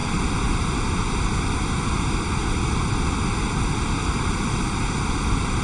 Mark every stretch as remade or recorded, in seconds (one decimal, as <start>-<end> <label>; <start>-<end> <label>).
0.0-5.6 recorded